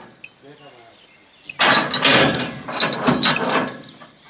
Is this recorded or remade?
recorded